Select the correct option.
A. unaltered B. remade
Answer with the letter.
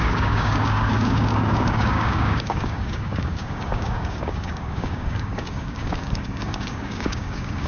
B